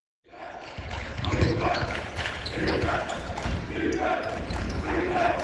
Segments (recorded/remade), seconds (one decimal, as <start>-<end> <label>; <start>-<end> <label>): 0.0-3.3 remade; 3.3-4.6 recorded; 4.6-5.4 remade